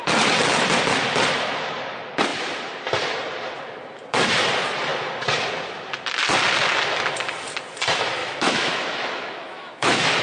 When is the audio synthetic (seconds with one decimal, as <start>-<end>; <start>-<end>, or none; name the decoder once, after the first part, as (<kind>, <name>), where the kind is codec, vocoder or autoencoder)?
8.2-10.2 (autoencoder, DAC-VAE)